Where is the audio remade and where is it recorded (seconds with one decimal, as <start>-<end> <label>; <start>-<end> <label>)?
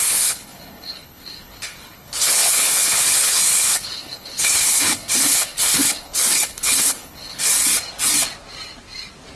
0.0-7.5 remade; 7.5-9.4 recorded